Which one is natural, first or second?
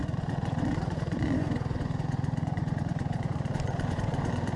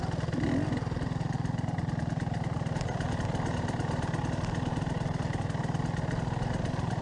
second